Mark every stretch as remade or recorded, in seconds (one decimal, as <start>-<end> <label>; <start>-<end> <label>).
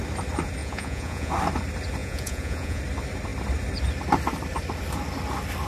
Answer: 0.0-0.6 recorded; 0.6-1.3 remade; 1.3-2.0 recorded; 2.0-2.8 remade; 2.8-5.7 recorded